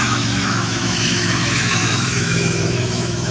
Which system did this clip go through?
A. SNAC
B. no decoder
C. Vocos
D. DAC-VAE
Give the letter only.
D